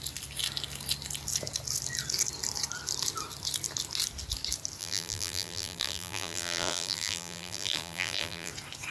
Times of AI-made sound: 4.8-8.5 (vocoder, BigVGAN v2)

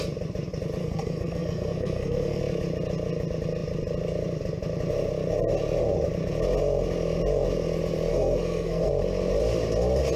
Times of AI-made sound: 0.8-2.4 (codec, SNAC); 8.1-8.9

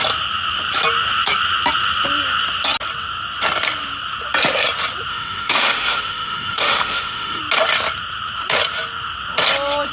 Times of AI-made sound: 5.1-7.4 (autoencoder, DAC-VAE)